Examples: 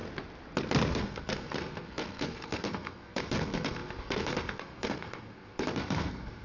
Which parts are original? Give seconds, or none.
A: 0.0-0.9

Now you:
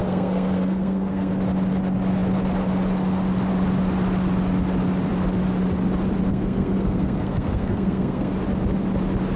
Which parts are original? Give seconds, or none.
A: 1.3-6.3; 8.3-9.4

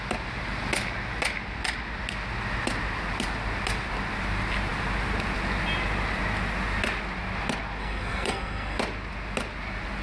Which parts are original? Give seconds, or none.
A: 0.0-7.8; 8.8-10.0

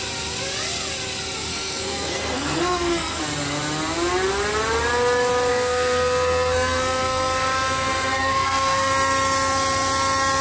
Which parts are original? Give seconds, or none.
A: 0.0-1.5; 3.2-5.5; 8.9-10.4

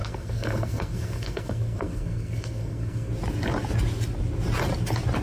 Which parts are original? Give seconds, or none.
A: 3.1-5.2

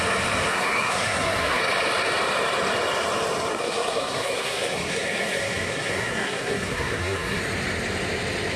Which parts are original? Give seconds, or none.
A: 0.0-0.5; 1.6-3.5; 7.4-8.6

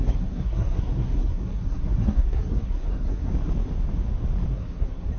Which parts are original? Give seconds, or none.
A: 3.3-4.5